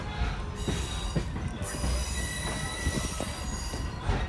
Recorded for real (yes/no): yes